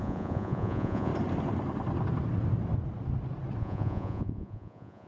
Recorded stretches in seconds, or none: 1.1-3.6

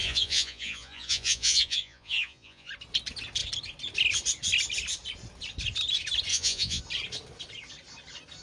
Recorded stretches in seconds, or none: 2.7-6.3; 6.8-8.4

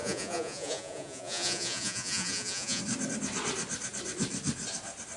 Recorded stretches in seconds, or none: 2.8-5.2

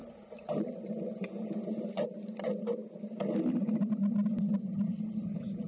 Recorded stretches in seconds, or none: 0.0-5.7

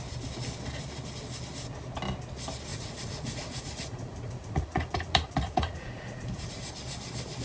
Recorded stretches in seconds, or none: 0.0-2.7; 6.7-7.4

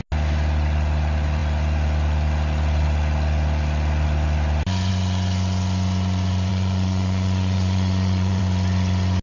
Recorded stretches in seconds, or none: 0.0-6.5; 8.4-9.2

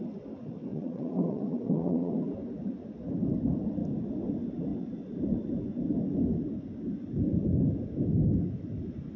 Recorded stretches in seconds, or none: 0.0-0.7; 2.1-9.2